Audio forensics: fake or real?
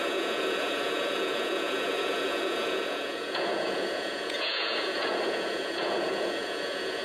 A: fake